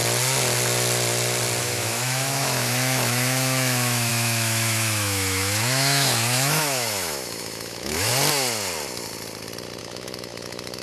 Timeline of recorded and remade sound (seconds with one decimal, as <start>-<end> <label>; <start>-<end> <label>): 0.0-1.6 recorded; 1.6-8.1 remade; 8.1-9.8 recorded; 9.8-10.8 remade